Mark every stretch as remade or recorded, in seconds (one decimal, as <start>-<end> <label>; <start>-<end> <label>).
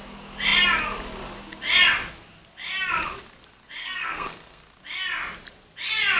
0.0-3.8 recorded; 3.8-4.6 remade; 4.6-6.2 recorded